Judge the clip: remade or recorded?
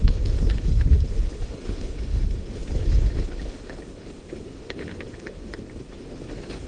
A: remade